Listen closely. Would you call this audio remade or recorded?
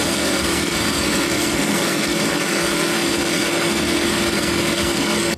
remade